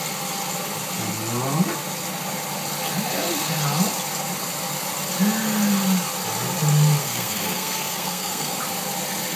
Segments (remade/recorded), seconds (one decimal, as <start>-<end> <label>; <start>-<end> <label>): 0.0-7.0 recorded; 7.0-8.6 remade; 8.6-9.4 recorded